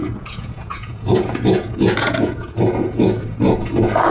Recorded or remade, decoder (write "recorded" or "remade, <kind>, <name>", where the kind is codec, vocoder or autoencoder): remade, vocoder, Vocos